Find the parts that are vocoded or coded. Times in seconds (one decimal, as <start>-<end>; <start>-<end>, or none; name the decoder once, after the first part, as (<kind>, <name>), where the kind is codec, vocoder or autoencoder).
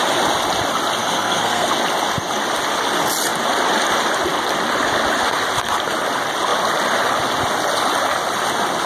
1.0-1.7 (codec, SNAC)